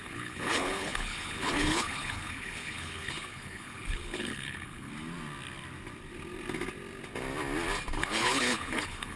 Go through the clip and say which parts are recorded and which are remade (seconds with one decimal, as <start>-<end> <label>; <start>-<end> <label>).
0.0-4.9 remade; 4.9-7.9 recorded; 7.9-9.2 remade